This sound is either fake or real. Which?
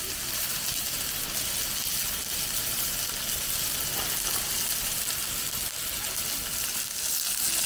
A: real